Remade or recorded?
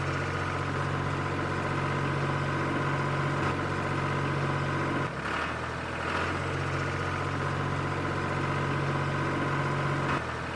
recorded